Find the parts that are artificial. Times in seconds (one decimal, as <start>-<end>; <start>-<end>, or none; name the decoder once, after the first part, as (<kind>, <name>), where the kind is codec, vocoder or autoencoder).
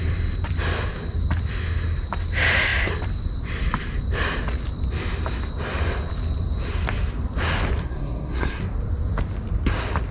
7.8-8.6 (codec, SNAC)